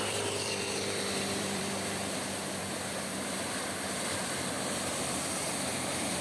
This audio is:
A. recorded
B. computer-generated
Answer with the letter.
B